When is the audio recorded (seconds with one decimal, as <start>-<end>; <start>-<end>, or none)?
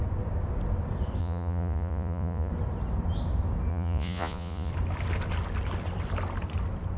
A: 0.0-1.2; 2.5-3.7; 4.7-7.0